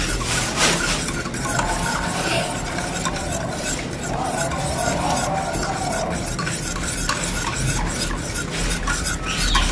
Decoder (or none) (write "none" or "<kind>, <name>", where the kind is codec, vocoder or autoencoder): none